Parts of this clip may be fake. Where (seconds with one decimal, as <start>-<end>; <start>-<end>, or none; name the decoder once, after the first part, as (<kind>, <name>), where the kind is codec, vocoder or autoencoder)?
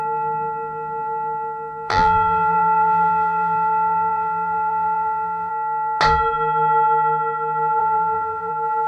1.9-5.5 (vocoder, BigVGAN v2); 7.8-8.5